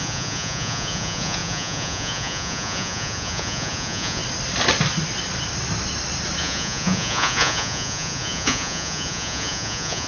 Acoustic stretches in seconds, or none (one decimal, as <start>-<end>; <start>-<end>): 4.2-6.4